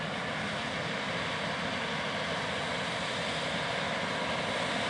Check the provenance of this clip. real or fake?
real